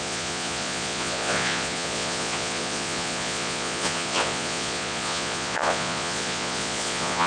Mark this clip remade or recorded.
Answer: remade